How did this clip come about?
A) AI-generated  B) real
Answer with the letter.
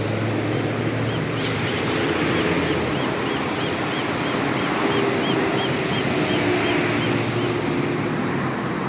B